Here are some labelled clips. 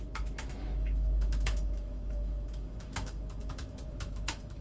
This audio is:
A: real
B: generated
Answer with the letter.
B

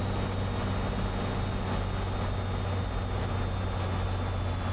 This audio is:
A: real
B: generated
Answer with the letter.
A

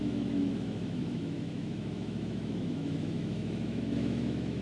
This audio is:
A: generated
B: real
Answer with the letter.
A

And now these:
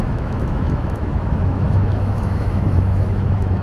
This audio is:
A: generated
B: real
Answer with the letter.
A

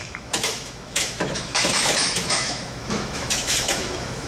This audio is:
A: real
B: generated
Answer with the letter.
B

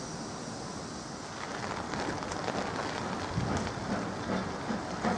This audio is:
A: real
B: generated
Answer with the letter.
A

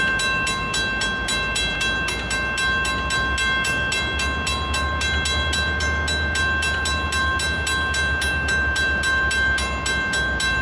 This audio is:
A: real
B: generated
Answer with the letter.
A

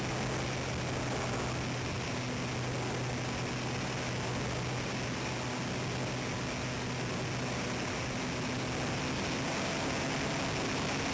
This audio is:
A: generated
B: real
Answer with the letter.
B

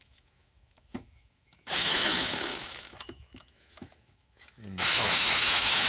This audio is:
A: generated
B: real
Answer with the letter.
A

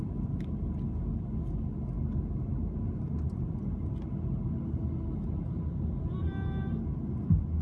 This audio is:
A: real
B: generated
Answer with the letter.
A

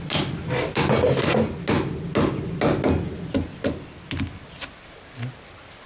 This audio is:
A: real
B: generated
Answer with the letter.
A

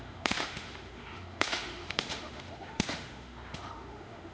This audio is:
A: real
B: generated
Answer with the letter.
B